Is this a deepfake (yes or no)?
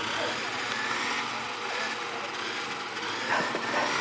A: no